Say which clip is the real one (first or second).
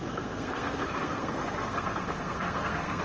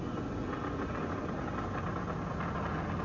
second